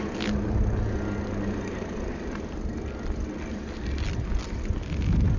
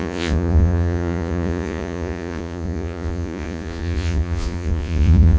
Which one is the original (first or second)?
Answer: first